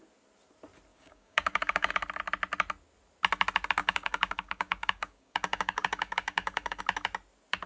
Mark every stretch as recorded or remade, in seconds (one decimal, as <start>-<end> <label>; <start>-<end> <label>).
0.0-0.9 recorded; 0.9-1.9 remade; 1.9-3.8 recorded; 3.8-6.8 remade; 6.8-7.7 recorded